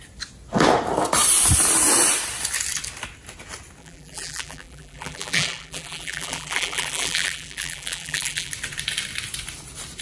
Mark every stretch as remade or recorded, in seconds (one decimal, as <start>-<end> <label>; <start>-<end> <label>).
0.0-3.8 recorded; 3.8-8.5 remade; 8.5-10.0 recorded